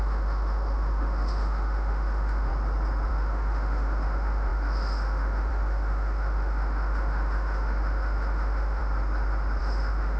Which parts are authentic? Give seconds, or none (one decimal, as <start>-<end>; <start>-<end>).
2.5-3.1; 8.8-9.6